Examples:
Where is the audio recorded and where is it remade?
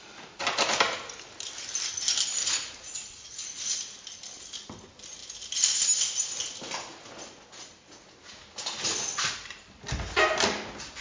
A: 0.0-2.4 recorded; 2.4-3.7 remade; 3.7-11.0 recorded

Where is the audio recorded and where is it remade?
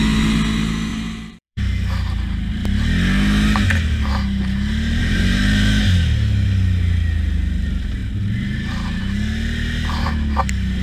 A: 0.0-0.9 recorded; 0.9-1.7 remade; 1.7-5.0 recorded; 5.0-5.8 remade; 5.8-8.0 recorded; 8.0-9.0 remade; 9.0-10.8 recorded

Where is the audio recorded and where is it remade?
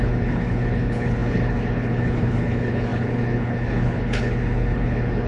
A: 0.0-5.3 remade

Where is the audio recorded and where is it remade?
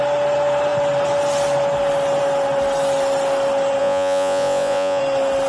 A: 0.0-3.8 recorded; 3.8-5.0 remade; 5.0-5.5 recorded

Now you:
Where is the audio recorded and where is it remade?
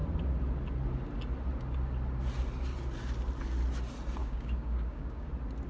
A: 0.0-4.2 recorded; 4.2-5.3 remade; 5.3-5.7 recorded